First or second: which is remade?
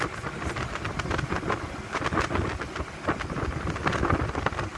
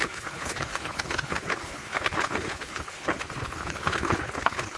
second